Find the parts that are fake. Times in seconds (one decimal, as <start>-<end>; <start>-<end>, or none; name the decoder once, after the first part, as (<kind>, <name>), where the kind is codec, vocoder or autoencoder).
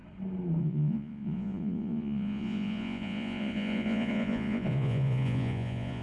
0.6-6.0 (vocoder, Vocos)